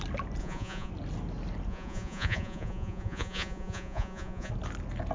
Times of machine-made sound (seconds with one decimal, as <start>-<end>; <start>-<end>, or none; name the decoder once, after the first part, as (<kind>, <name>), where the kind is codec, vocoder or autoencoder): 0.4-0.9 (vocoder, Vocos); 1.7-4.5